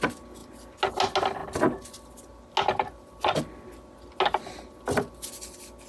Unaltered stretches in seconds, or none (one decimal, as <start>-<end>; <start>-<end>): 0.0-5.9